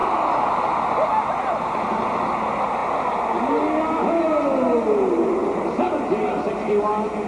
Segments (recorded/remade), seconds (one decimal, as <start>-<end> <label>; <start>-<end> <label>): 0.0-0.5 remade; 0.5-1.1 recorded; 1.1-1.7 remade; 1.7-5.4 recorded; 5.4-6.5 remade; 6.5-7.3 recorded